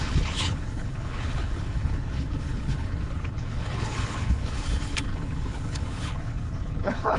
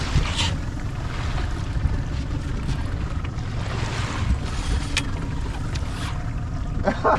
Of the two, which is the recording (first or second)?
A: second